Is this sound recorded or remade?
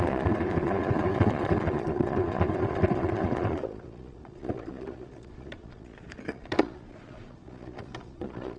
remade